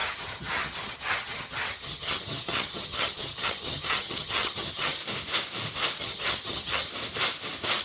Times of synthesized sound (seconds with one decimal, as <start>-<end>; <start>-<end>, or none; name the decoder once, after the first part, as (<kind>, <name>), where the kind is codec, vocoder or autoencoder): 0.0-5.0 (vocoder, HiFi-GAN); 6.0-6.9